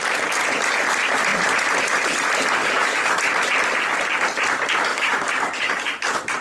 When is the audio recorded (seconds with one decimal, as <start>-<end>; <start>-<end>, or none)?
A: 0.0-2.6; 3.2-4.9; 5.8-6.4